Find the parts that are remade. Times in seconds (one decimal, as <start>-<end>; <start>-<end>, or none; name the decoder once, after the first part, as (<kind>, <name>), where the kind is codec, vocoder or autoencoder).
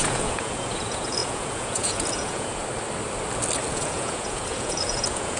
0.0-2.6 (vocoder, Vocos); 3.7-5.4